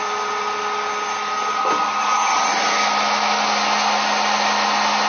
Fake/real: real